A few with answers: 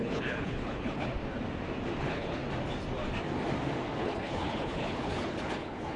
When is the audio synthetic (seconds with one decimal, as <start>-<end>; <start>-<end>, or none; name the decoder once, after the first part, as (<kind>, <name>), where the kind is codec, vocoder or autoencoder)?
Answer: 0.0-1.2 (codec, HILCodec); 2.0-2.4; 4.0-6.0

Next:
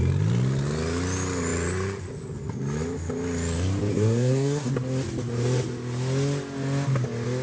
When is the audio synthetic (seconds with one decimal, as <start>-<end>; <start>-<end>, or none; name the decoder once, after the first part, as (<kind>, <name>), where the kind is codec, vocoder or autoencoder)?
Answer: 3.9-4.7 (codec, SNAC)

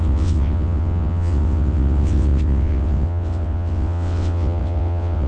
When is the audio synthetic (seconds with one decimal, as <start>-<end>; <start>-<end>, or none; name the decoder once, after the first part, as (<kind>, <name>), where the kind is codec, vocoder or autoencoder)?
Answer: 0.0-5.3 (vocoder, WaveNeXt)

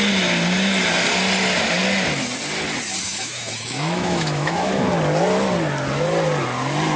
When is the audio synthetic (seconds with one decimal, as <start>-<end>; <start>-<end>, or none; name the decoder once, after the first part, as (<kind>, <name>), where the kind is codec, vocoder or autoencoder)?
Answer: 3.0-4.7 (autoencoder, DAC-VAE)